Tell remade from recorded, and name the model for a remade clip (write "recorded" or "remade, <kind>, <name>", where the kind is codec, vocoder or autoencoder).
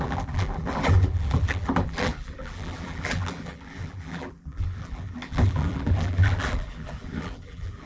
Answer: remade, vocoder, BigVGAN v2